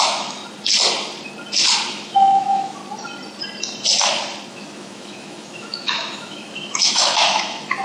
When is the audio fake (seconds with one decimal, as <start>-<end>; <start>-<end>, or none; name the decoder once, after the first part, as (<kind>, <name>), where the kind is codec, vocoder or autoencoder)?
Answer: 0.0-0.4 (autoencoder, DAC-VAE); 1.9-2.8; 4.5-7.8

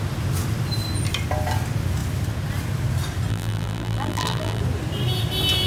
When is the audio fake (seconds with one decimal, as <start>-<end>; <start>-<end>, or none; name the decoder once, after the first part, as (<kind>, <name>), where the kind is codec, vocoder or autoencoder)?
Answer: 3.3-4.6 (vocoder, BigVGAN v2)